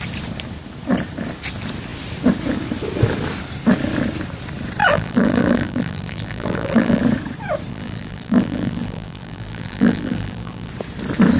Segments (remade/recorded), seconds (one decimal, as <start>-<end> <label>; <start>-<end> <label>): 0.0-4.8 recorded; 4.8-7.0 remade; 7.0-7.7 recorded; 7.7-10.7 remade; 10.7-11.4 recorded